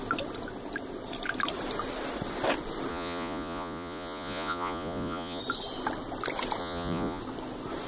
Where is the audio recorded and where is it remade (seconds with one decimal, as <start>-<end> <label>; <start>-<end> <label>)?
0.0-2.9 recorded; 2.9-5.4 remade; 5.4-6.6 recorded; 6.6-7.2 remade; 7.2-7.9 recorded